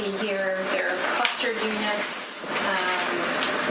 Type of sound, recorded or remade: recorded